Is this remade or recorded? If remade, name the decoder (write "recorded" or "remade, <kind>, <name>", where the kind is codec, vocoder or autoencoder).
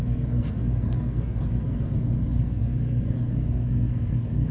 remade, codec, SNAC